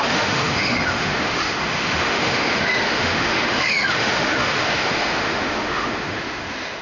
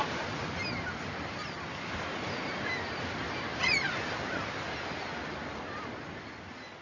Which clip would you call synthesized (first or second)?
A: first